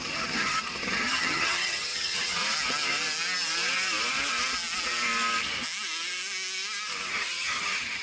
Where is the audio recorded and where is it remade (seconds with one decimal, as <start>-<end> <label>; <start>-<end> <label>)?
0.0-2.4 remade; 2.4-7.1 recorded; 7.1-8.0 remade